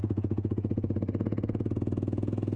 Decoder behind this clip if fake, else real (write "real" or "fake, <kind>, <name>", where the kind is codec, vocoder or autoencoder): fake, vocoder, Vocos